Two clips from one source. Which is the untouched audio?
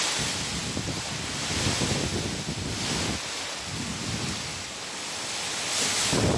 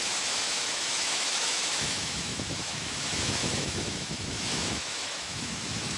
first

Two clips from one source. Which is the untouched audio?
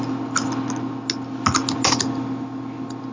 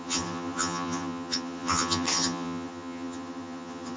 first